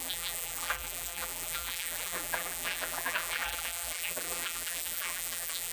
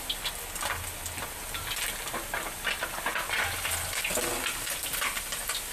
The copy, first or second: first